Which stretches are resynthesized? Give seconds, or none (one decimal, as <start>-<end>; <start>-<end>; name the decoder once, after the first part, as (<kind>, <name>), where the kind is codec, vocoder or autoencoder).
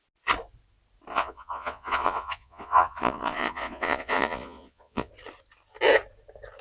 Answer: 1.1-5.1 (vocoder, Vocos)